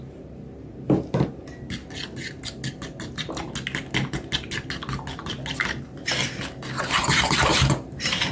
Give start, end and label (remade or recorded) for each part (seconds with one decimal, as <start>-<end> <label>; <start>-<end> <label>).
0.0-1.4 remade; 1.4-6.4 recorded; 6.4-8.3 remade